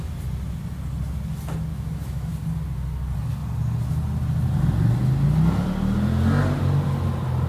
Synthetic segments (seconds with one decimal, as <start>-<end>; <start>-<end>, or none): 1.7-2.3